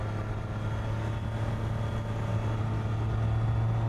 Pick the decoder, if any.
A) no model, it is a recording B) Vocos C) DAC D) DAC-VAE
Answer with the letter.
A